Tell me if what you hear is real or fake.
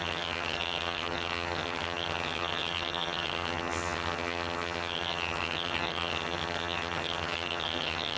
fake